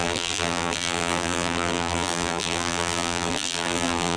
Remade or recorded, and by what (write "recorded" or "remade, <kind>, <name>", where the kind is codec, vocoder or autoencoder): remade, vocoder, BigVGAN v2